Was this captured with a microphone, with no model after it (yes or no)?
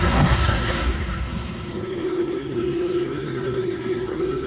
no